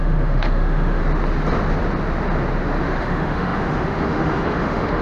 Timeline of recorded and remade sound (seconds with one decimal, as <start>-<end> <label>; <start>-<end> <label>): 0.0-1.0 remade; 1.0-3.0 recorded; 3.0-5.0 remade